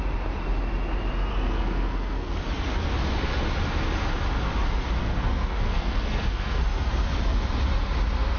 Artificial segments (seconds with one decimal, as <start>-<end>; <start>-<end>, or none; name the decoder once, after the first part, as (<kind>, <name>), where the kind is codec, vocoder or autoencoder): 1.3-2.4 (codec, SNAC); 5.0-6.9